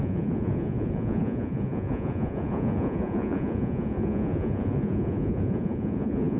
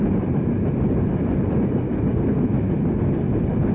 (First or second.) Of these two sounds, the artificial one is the first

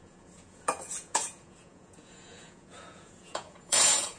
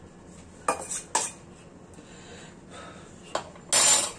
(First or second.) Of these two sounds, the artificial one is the first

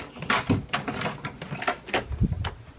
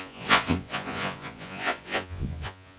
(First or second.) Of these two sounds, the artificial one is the second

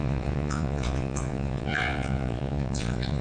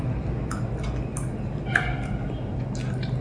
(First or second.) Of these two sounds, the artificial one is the first